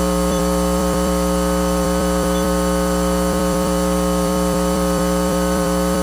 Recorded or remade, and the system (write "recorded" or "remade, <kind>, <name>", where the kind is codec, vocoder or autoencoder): remade, vocoder, BigVGAN v2